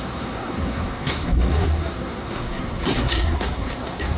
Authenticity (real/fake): fake